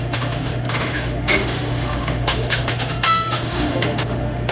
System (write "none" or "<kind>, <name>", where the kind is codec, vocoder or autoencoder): autoencoder, DAC-VAE